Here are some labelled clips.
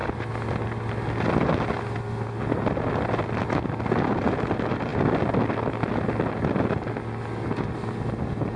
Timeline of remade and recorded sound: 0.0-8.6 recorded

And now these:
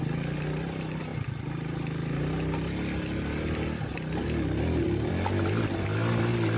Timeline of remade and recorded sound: 0.0-6.6 recorded

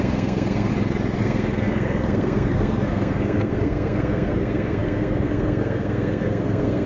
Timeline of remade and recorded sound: 0.0-0.7 remade; 0.7-1.2 recorded; 1.2-6.9 remade

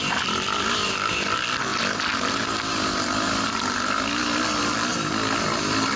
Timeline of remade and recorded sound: 0.0-6.0 recorded

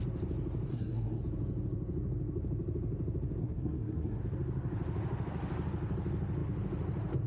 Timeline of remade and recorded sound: 0.0-0.7 recorded; 0.7-1.2 remade; 1.2-3.4 recorded; 3.4-4.2 remade; 4.2-7.3 recorded